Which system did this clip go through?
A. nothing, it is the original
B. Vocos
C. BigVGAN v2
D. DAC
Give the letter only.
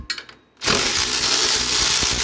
A